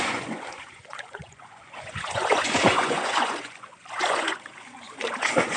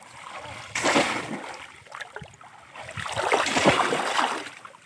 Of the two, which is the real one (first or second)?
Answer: second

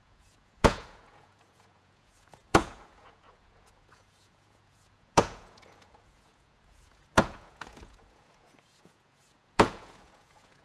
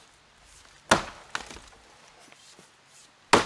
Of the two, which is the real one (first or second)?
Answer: second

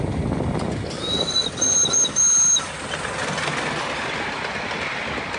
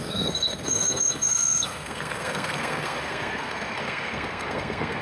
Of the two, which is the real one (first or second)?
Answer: first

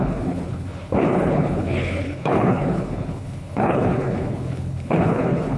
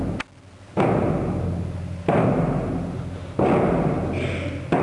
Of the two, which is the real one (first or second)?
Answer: second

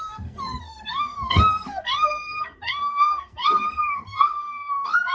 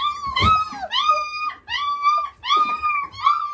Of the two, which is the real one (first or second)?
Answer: second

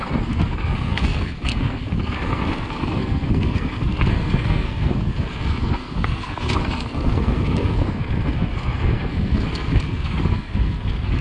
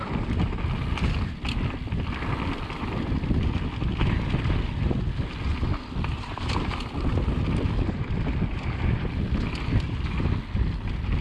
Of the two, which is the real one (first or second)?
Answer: second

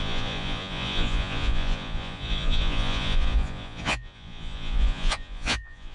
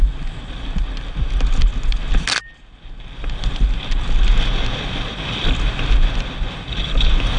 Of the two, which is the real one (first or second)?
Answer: second